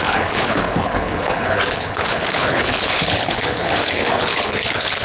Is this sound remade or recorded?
remade